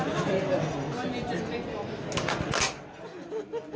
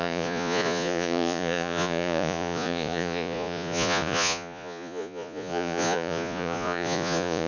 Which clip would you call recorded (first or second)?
first